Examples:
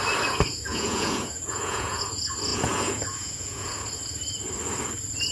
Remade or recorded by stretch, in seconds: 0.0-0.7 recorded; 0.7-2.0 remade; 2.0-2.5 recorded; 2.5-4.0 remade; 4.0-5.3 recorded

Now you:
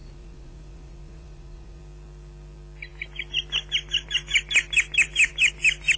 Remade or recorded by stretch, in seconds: 0.0-1.8 remade; 1.8-6.0 recorded

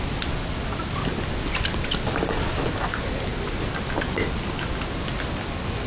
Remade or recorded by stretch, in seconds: 0.0-5.9 recorded

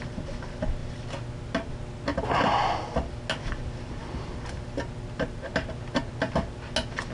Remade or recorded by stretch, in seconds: 0.0-7.1 recorded